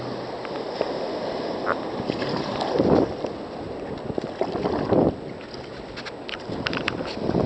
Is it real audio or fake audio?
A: real